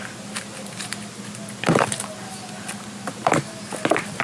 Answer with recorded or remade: recorded